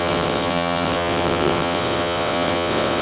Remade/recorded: remade